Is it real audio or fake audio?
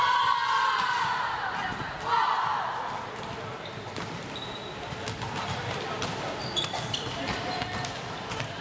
fake